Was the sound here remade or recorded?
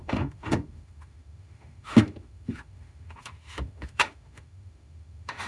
remade